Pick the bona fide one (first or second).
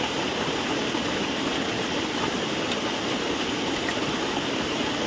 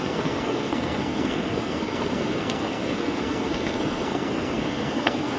first